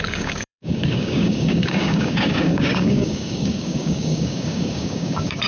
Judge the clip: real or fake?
fake